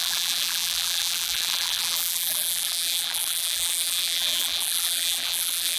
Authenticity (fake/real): fake